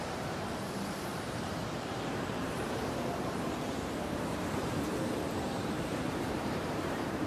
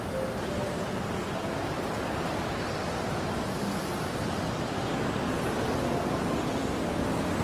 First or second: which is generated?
first